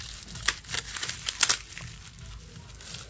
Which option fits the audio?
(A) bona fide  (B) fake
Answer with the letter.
A